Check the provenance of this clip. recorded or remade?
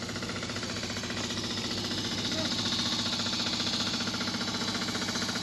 recorded